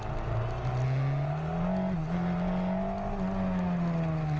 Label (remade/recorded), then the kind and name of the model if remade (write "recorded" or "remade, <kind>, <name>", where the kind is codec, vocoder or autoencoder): recorded